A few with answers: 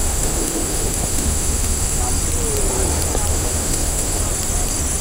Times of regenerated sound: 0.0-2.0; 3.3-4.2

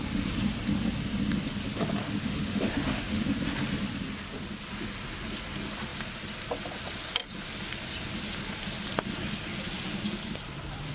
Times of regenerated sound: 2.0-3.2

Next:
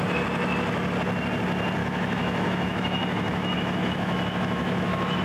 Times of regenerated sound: 1.8-5.2

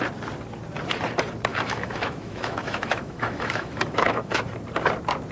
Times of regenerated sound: 1.5-4.4

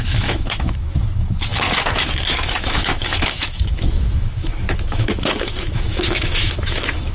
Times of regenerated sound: 0.0-7.1